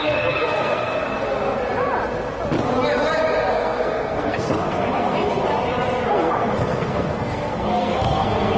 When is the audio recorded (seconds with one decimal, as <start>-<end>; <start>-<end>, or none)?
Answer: 1.0-3.5; 5.5-6.1